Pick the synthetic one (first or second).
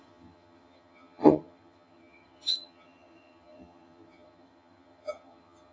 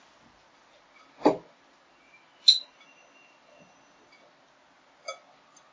first